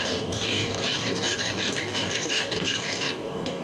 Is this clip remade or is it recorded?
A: remade